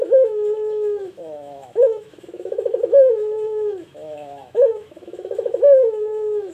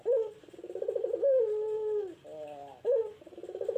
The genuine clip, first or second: second